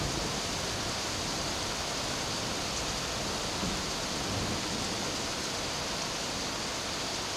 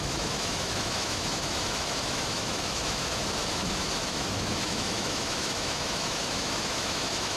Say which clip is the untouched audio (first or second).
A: first